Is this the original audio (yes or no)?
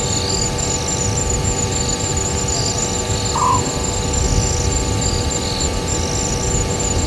yes